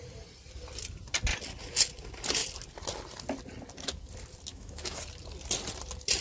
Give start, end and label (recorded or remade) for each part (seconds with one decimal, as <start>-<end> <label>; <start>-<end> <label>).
0.0-4.5 recorded; 4.5-5.0 remade; 5.0-6.2 recorded